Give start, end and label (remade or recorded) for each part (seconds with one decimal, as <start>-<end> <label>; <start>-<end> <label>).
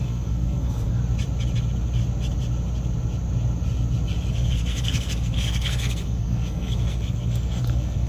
0.0-1.0 remade; 1.0-4.3 recorded; 4.3-8.1 remade